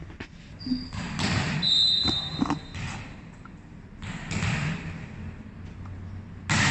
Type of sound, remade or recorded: recorded